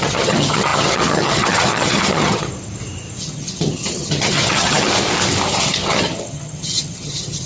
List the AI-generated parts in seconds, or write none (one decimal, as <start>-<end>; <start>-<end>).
0.0-2.5; 3.2-4.9; 5.5-7.5